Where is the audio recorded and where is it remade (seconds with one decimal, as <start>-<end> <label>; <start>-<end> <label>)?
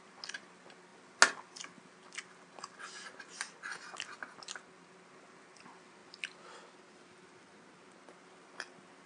0.0-9.1 recorded